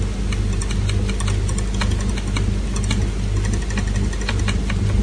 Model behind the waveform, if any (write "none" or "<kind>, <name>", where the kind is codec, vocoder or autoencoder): none